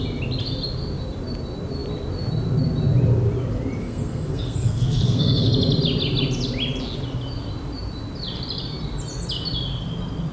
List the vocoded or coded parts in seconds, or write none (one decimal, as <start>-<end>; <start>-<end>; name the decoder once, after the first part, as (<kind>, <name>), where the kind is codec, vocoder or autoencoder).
3.8-5.5 (codec, SNAC)